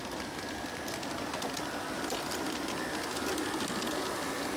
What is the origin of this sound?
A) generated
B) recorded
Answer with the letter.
B